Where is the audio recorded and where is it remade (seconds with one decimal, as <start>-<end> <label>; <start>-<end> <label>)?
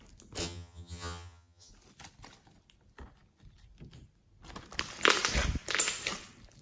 0.0-0.4 recorded; 0.4-1.7 remade; 1.7-6.6 recorded